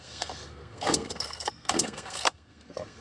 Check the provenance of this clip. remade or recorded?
remade